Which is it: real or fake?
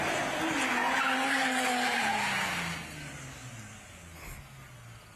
real